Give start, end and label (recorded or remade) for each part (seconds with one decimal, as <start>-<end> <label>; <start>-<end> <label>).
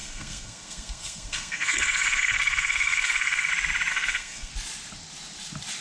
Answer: 0.0-3.5 remade; 3.5-3.9 recorded; 3.9-4.5 remade; 4.5-5.8 recorded